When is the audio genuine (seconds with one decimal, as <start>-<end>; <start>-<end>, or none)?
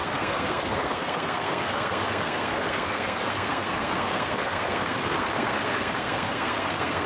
none